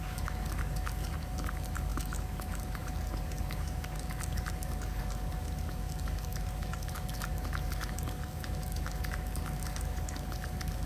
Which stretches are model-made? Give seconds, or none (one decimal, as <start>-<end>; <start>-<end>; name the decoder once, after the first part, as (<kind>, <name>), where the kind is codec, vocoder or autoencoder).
0.0-10.9 (codec, DAC)